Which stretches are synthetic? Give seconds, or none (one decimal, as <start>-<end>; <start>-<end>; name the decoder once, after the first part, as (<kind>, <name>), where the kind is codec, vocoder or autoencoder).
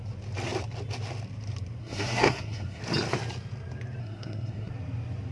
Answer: 1.8-2.8 (codec, SNAC); 4.0-4.7